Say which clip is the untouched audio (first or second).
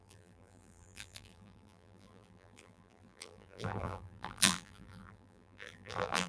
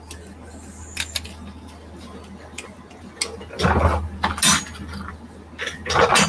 second